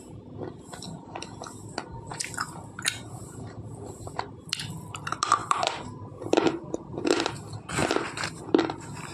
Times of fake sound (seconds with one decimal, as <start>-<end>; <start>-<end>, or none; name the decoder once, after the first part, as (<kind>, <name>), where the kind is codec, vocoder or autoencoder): 2.1-3.9 (vocoder, BigVGAN v2); 5.4-7.3